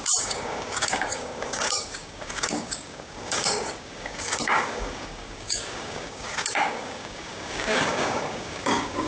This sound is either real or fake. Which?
fake